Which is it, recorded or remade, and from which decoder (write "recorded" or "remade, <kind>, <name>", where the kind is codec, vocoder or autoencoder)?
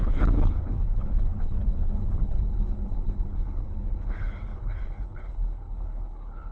remade, codec, HILCodec